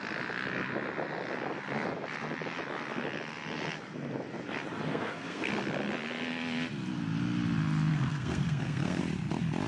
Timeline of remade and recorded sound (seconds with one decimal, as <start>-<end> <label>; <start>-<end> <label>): 0.0-4.9 recorded; 4.9-5.5 remade; 5.5-7.9 recorded; 7.9-9.0 remade; 9.0-9.7 recorded